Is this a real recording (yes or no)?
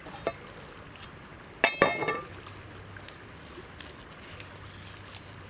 yes